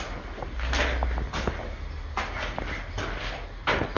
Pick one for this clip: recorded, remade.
recorded